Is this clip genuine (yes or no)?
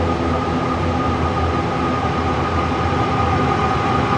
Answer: yes